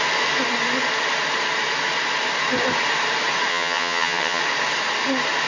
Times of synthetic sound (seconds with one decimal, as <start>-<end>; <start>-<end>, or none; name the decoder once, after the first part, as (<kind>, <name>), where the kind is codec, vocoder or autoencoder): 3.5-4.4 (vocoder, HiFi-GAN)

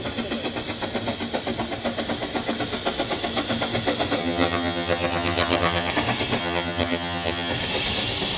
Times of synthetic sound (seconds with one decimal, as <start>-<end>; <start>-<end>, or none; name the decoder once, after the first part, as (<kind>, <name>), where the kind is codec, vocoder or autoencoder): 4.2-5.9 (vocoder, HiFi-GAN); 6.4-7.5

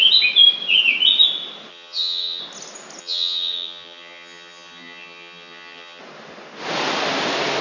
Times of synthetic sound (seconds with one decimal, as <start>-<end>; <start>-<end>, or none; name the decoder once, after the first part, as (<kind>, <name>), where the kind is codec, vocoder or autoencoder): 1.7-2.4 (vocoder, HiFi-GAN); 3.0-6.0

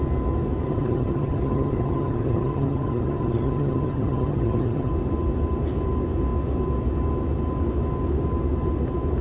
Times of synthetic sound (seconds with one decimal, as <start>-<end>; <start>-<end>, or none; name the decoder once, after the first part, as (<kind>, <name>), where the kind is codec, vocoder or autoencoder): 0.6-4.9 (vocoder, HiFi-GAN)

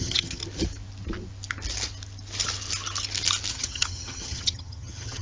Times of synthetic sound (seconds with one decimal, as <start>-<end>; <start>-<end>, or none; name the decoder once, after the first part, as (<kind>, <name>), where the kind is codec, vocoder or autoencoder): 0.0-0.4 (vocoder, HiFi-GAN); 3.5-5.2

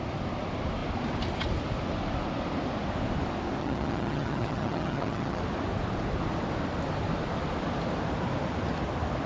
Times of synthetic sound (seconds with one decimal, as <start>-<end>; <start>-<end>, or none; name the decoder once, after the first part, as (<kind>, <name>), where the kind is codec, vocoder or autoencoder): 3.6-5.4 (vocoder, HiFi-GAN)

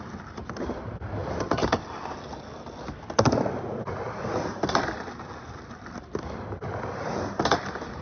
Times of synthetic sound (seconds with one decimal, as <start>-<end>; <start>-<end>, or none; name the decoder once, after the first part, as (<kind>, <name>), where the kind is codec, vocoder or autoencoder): none